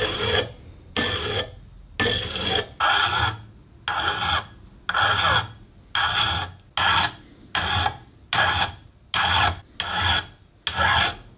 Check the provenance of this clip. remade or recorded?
recorded